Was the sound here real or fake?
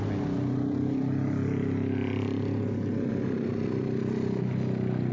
real